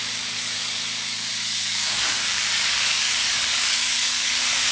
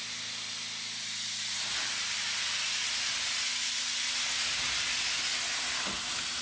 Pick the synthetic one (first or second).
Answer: first